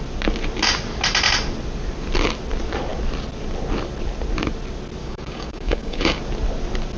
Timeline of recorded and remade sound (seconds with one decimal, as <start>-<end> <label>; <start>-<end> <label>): 0.0-5.0 recorded; 5.0-6.2 remade; 6.2-7.0 recorded

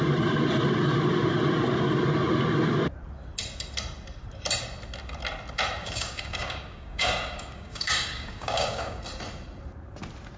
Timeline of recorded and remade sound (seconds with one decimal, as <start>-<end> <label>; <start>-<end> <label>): 0.0-5.8 recorded; 5.8-9.0 remade; 9.0-10.4 recorded